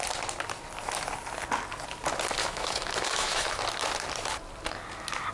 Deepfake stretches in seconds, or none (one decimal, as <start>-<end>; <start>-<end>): 2.4-3.6